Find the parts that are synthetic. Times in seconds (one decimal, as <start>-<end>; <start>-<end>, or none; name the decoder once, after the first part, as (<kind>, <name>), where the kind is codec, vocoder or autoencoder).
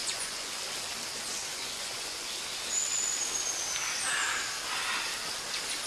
0.0-0.6 (vocoder, Vocos); 1.5-2.4